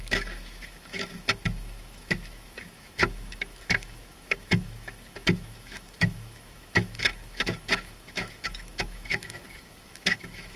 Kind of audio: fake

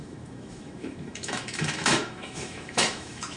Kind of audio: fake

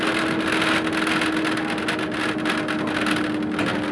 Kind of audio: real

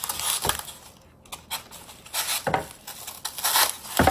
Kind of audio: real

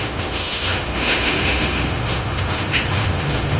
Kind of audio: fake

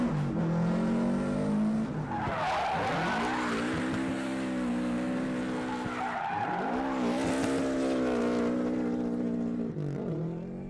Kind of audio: real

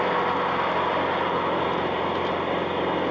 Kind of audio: real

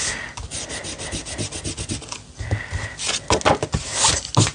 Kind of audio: real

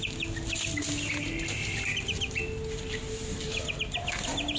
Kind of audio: real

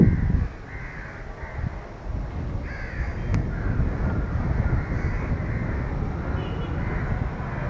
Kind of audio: real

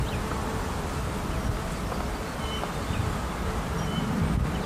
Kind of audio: real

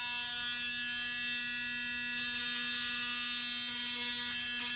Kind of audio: real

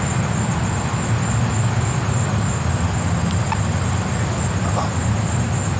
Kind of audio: real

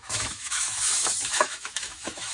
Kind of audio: fake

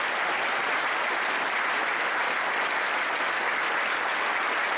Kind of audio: real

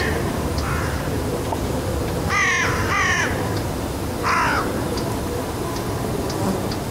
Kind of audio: real